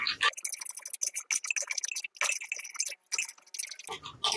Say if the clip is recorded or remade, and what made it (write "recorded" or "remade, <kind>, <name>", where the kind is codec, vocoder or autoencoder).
recorded